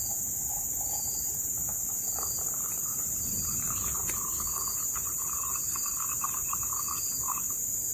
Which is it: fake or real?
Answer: fake